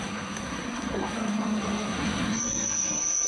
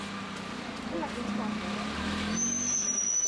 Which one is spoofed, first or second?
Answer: first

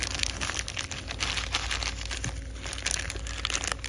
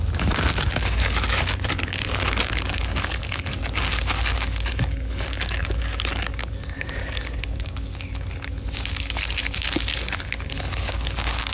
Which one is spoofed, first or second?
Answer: second